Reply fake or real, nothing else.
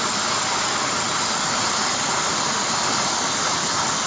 real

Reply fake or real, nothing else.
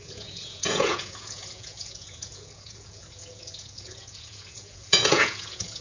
fake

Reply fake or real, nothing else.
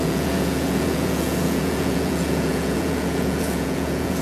fake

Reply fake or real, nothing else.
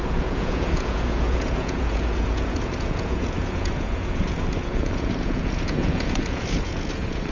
fake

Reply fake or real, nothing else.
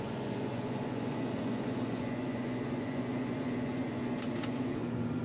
fake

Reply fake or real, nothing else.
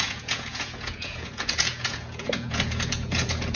fake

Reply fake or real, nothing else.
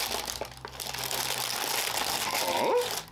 real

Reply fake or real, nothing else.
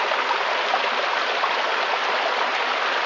real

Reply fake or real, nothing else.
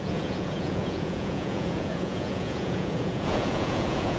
fake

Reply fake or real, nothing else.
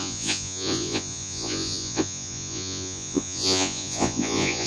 fake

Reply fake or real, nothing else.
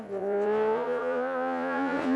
fake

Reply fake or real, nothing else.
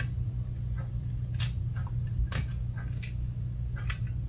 real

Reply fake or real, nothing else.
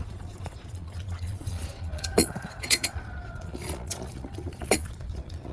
fake